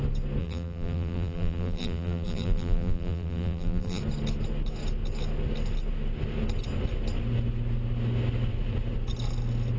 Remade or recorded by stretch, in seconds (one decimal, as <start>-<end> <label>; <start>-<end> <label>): 0.0-0.4 recorded; 0.4-4.0 remade; 4.0-9.8 recorded